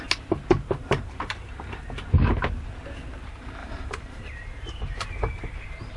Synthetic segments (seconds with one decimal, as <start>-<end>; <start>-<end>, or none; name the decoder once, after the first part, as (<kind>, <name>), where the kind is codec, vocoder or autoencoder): 3.6-5.0 (vocoder, BigVGAN v2)